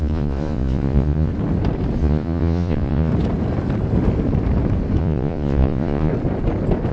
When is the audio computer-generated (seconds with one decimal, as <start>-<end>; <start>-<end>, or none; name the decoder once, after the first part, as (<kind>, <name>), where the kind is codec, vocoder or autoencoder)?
0.0-1.3 (vocoder, Vocos); 2.0-3.1; 5.0-6.1